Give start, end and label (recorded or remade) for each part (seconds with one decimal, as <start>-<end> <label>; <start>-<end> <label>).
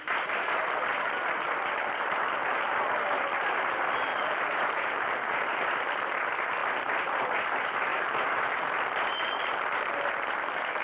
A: 0.0-0.9 recorded; 0.9-2.2 remade; 2.2-4.1 recorded; 4.1-5.7 remade; 5.7-7.9 recorded; 7.9-9.9 remade; 9.9-10.8 recorded